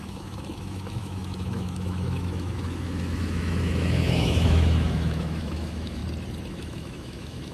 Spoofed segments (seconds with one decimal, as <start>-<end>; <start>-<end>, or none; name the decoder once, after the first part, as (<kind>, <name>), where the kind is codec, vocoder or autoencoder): 0.0-6.0 (autoencoder, DAC-VAE); 6.5-7.5